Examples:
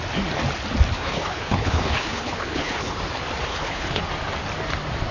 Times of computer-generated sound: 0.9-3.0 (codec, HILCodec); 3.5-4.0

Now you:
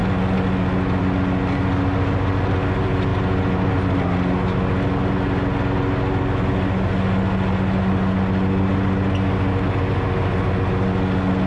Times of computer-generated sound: none